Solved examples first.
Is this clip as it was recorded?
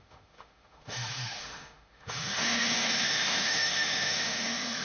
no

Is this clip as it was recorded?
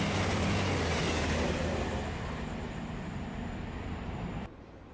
yes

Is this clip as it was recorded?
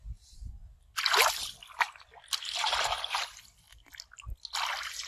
yes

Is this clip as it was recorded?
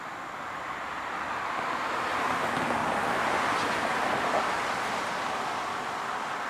yes